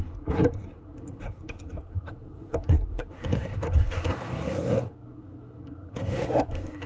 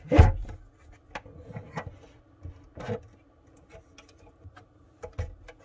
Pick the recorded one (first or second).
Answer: second